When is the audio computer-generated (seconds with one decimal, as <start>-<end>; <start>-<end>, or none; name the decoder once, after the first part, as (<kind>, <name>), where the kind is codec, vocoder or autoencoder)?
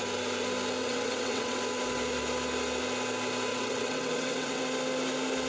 0.8-1.6 (vocoder, WaveNeXt); 3.5-4.6